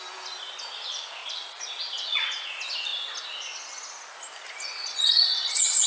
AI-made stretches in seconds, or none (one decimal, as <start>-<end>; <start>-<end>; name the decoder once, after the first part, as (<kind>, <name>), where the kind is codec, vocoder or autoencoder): 1.2-2.5 (vocoder, Vocos); 4.8-5.9